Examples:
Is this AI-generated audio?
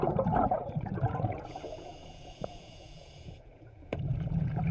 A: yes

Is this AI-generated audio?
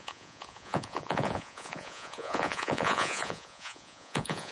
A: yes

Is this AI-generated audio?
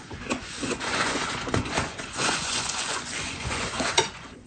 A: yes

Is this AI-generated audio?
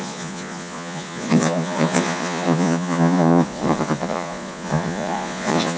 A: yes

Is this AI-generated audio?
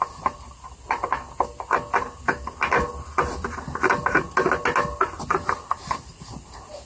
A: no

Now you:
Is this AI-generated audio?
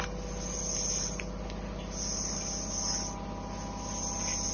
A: no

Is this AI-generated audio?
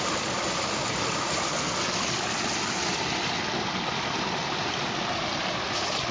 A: no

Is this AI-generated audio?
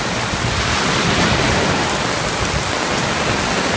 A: no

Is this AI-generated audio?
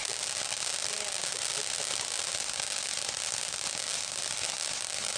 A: no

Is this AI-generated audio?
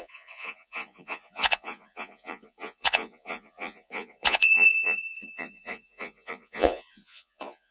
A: yes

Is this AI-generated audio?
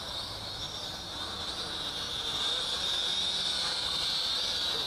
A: no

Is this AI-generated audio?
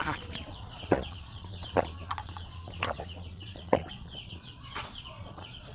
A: yes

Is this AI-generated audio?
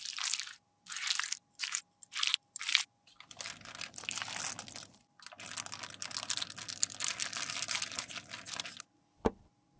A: no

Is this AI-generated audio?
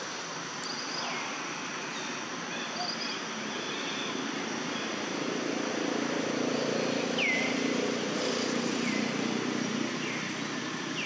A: no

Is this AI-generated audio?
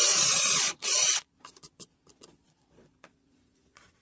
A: yes